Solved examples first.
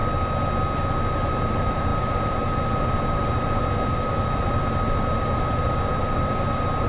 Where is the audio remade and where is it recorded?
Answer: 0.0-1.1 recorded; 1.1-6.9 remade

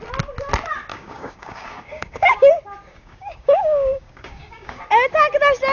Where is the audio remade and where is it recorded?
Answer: 0.0-0.9 recorded; 0.9-2.5 remade; 2.5-2.9 recorded; 2.9-4.8 remade; 4.8-5.7 recorded

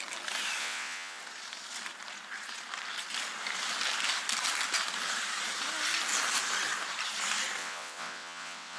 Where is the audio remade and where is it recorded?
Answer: 0.0-0.6 recorded; 0.6-1.2 remade; 1.2-7.6 recorded; 7.6-8.8 remade

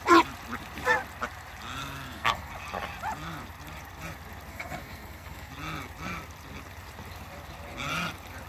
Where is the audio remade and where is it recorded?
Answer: 0.0-1.8 recorded; 1.8-2.5 remade; 2.5-4.5 recorded; 4.5-5.5 remade; 5.5-8.5 recorded